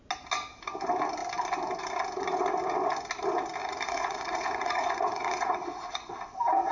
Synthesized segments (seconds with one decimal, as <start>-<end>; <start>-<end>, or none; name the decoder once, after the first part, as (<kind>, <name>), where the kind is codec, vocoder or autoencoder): 3.6-6.1 (vocoder, Vocos)